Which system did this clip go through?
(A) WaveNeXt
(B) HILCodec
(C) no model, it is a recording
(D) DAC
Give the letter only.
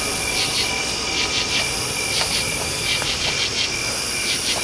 C